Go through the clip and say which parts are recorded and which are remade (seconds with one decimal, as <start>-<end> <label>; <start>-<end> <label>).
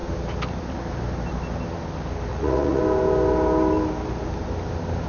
0.0-2.3 recorded; 2.3-2.8 remade; 2.8-5.1 recorded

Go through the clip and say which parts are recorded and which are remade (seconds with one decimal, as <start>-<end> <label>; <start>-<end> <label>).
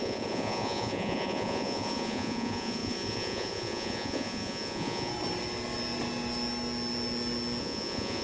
0.0-5.1 remade; 5.1-7.6 recorded; 7.6-8.2 remade